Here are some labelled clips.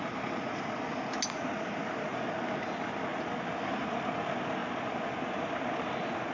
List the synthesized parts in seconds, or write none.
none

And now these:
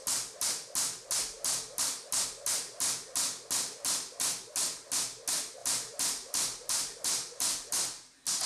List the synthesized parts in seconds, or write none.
5.6-7.7

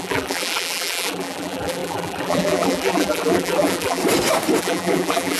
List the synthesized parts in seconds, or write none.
0.0-4.0; 4.6-5.4

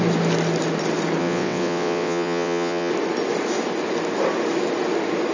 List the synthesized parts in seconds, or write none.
1.2-2.9

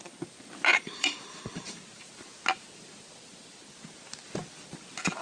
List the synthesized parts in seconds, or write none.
0.7-1.8

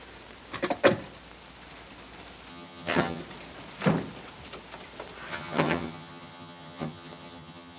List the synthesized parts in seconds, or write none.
2.5-3.2; 5.3-7.8

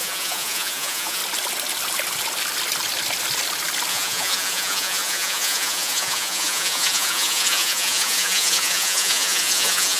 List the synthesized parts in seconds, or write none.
0.0-1.2; 3.9-10.0